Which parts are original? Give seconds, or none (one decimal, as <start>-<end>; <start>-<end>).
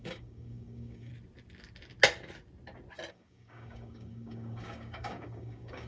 1.1-3.1